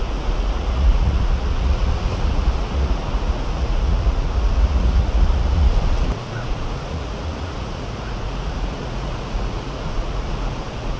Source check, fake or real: fake